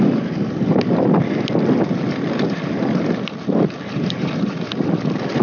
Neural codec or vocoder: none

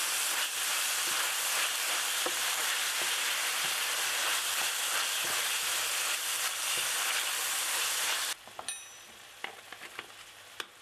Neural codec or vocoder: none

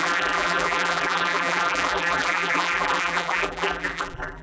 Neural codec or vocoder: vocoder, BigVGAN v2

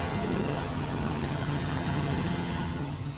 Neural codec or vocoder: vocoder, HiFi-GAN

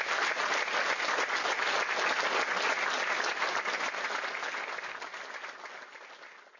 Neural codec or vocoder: none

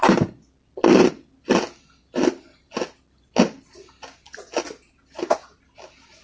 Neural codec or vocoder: none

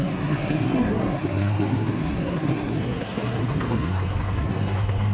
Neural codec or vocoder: codec, SNAC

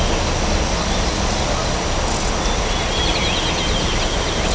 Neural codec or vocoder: none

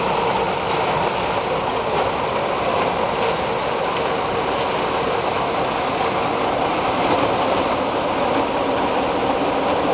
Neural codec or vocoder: none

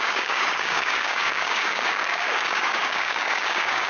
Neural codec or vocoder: codec, DAC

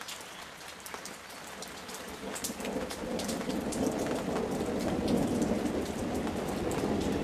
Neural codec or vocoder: none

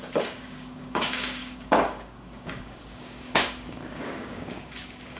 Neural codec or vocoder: codec, DAC